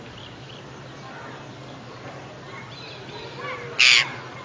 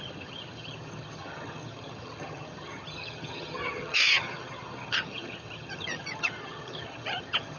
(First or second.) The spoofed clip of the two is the second